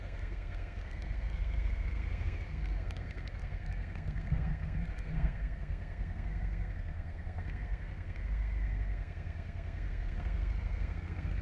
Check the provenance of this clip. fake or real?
fake